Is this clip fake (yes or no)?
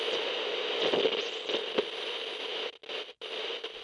no